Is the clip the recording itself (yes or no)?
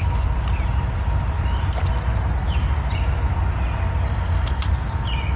yes